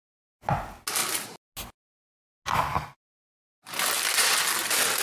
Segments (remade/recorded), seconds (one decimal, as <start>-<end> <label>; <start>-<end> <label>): 0.0-5.0 recorded